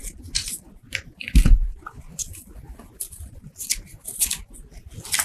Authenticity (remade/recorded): recorded